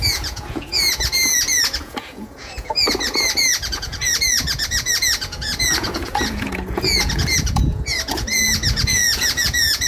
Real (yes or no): no